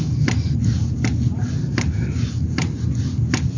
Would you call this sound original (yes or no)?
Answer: yes